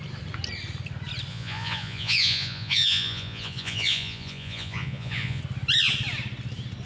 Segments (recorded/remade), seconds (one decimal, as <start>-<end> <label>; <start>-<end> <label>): 0.0-1.3 recorded; 1.3-5.4 remade; 5.4-6.9 recorded